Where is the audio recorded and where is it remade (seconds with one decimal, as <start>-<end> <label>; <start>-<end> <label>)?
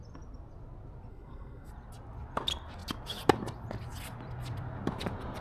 0.0-1.1 recorded; 1.1-1.7 remade; 1.7-5.4 recorded